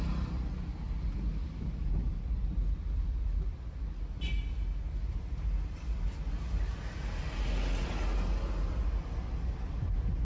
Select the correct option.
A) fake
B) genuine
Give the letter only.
B